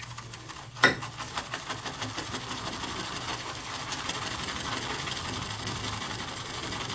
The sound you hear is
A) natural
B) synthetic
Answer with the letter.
A